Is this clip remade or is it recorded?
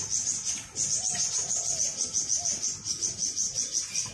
recorded